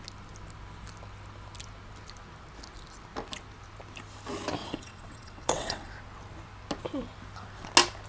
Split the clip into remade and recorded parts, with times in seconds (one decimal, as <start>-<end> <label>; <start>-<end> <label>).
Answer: 0.0-4.6 recorded; 4.6-5.9 remade; 5.9-8.1 recorded